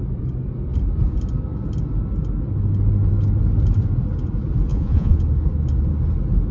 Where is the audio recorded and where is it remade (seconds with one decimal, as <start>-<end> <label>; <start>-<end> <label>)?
0.0-4.7 recorded; 4.7-5.2 remade; 5.2-6.5 recorded